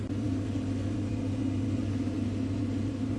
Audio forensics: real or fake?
real